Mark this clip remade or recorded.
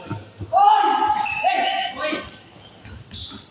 recorded